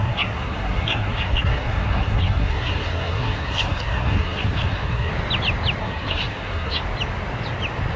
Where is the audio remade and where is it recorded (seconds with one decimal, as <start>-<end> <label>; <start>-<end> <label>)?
0.0-5.1 remade; 5.1-5.8 recorded; 5.8-6.8 remade; 6.8-8.0 recorded